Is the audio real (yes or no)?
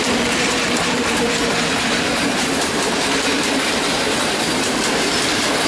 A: no